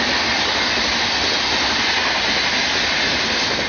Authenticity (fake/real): real